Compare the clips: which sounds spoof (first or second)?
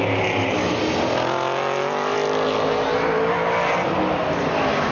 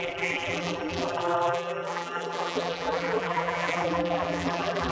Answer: second